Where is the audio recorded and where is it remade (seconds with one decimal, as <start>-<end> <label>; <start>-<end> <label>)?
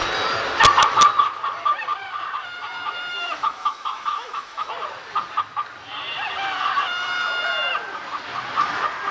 0.0-3.1 recorded; 3.1-4.7 remade; 4.7-9.1 recorded